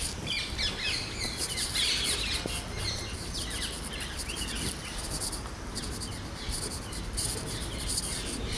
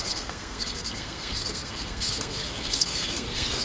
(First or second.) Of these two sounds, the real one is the first